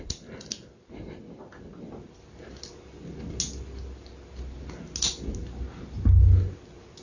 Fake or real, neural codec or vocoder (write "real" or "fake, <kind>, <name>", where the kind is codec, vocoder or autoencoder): real